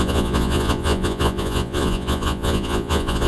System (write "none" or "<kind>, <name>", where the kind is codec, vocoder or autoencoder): vocoder, Vocos